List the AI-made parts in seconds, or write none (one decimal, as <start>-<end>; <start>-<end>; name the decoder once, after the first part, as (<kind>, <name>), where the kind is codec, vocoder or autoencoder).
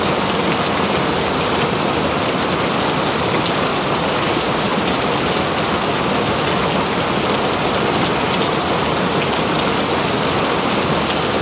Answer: 3.7-4.7 (vocoder, Vocos)